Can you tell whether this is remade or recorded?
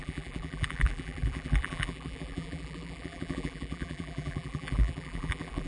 remade